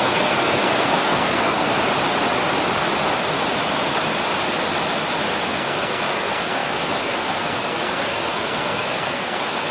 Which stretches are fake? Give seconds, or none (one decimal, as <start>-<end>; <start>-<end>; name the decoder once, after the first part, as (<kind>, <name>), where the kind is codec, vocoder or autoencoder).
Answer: 0.0-1.7 (codec, SNAC); 5.4-9.7